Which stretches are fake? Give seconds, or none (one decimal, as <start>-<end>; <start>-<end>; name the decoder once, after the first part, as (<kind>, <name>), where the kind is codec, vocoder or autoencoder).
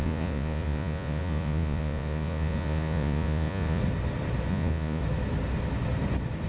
0.0-3.8 (vocoder, Vocos); 4.5-5.0